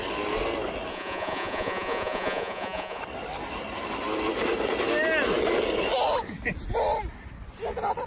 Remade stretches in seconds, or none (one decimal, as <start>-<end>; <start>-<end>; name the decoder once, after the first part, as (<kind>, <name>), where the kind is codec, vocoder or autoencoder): 0.9-3.0 (vocoder, Vocos)